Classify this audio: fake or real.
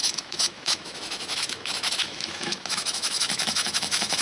fake